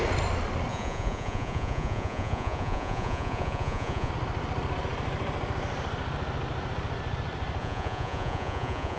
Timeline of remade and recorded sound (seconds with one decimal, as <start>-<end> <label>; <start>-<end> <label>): 0.0-0.7 recorded; 0.7-4.1 remade; 4.1-7.6 recorded; 7.6-9.0 remade